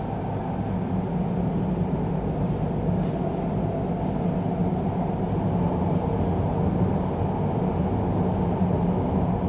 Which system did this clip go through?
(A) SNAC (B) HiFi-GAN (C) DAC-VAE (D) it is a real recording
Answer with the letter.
D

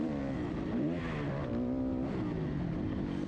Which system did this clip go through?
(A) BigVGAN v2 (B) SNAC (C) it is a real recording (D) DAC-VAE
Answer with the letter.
C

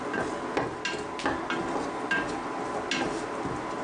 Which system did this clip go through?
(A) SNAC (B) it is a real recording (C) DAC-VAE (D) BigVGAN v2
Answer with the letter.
B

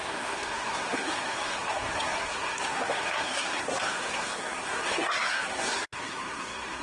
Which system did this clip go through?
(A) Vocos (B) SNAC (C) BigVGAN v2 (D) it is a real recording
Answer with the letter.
B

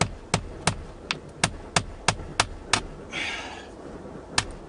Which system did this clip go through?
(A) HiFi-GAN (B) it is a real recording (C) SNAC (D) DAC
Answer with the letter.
B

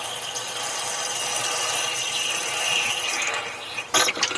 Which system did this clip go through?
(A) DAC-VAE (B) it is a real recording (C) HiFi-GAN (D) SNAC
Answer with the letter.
B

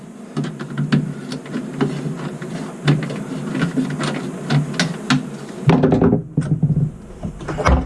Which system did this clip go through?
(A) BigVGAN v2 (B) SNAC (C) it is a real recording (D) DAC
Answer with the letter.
C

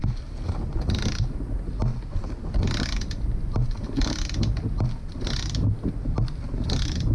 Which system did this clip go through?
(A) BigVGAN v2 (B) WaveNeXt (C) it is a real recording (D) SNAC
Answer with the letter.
C